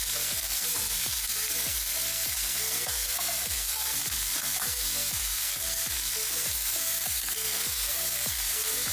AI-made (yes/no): yes